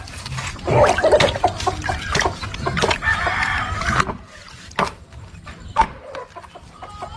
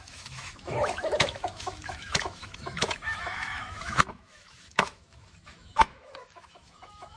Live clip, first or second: first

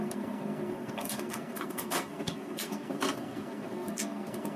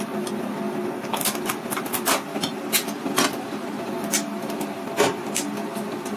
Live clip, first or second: second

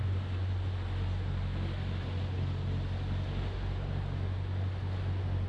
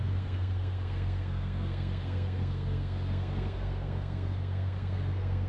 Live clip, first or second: first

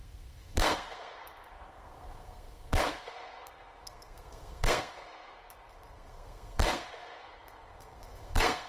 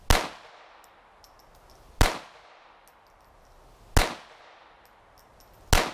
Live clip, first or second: second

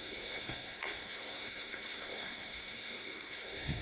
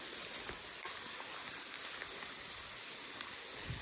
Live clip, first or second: second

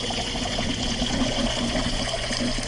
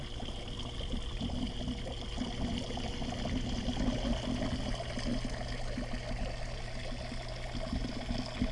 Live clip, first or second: second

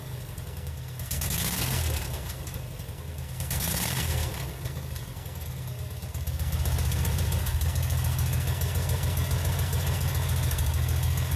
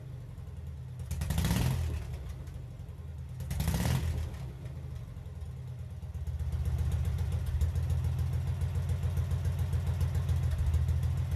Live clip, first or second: second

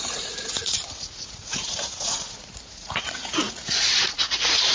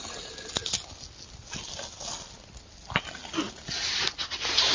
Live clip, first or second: second